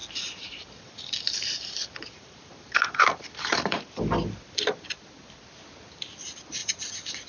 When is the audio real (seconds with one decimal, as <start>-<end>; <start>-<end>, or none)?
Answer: 4.0-7.3